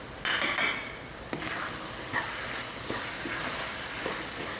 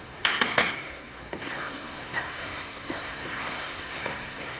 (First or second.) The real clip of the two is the first